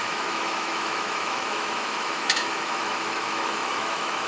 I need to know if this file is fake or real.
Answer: fake